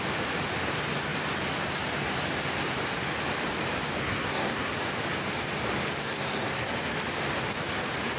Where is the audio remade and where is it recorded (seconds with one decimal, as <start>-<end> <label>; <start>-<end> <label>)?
0.0-4.0 recorded; 4.0-4.7 remade; 4.7-6.0 recorded; 6.0-6.7 remade; 6.7-8.2 recorded